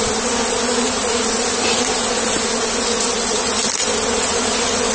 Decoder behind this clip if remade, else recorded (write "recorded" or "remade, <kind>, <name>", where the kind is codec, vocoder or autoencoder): recorded